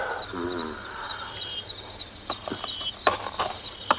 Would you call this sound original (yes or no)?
yes